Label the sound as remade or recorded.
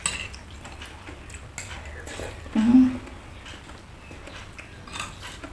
recorded